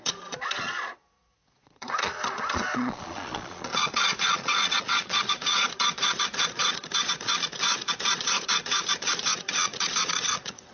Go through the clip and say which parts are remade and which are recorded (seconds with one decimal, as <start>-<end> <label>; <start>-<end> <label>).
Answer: 0.0-10.7 remade